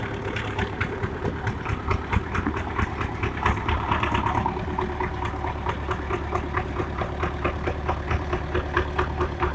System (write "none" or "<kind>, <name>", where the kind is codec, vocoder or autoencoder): vocoder, BigVGAN v2